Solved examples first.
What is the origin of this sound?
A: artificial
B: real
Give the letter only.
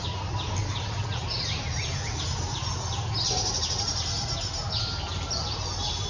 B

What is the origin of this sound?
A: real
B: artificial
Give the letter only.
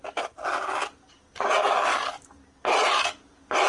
A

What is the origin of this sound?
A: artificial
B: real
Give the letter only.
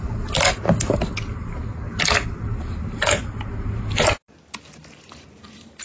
B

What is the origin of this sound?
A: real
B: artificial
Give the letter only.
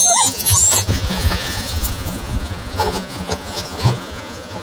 B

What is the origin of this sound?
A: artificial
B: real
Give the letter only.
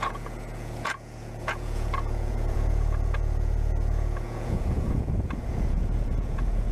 A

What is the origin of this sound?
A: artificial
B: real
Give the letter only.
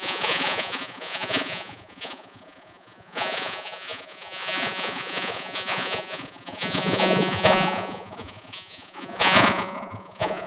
A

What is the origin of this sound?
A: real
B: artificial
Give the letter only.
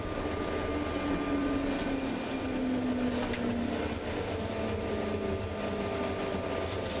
A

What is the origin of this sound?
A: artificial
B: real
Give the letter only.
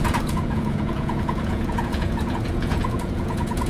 A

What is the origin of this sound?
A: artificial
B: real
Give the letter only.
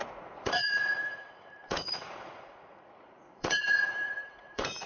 A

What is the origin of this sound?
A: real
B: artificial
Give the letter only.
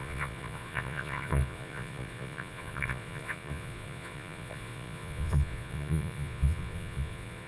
B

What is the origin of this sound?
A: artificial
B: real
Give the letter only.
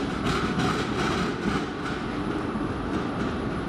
B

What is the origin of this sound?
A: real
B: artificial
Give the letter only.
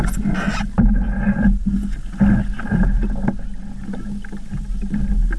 A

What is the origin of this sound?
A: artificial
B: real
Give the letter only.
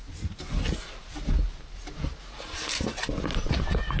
B